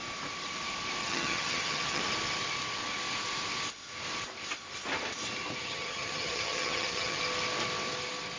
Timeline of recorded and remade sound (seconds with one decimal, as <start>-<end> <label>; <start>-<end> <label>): 0.0-1.0 recorded; 1.0-2.0 remade; 2.0-5.6 recorded; 5.6-7.2 remade; 7.2-8.4 recorded